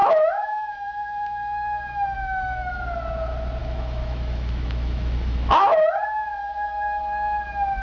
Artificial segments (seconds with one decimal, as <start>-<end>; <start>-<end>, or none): 0.0-2.8; 3.6-6.0; 6.4-7.0